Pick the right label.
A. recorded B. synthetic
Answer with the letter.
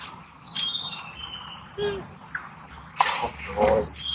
A